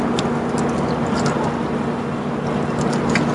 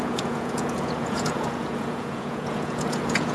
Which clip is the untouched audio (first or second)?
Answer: first